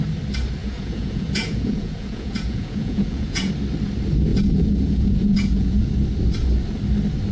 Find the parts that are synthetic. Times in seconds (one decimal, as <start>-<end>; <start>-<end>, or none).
0.6-3.5; 4.3-5.9